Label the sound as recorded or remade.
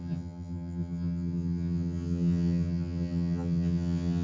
remade